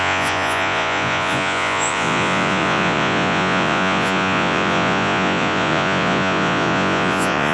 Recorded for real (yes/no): no